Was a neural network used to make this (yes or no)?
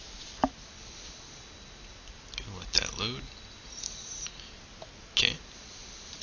no